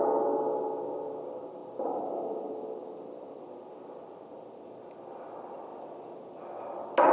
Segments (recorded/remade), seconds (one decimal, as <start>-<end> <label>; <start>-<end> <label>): 0.0-1.6 recorded; 1.6-3.4 remade; 3.4-7.1 recorded